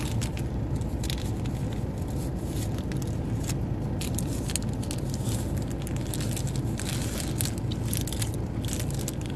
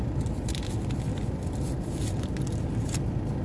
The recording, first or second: first